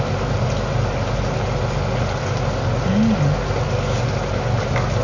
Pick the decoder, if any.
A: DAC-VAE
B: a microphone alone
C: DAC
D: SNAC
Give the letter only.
B